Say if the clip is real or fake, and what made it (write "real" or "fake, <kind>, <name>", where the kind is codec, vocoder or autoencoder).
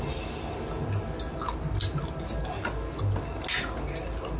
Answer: real